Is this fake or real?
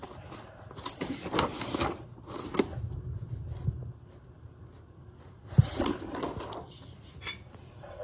real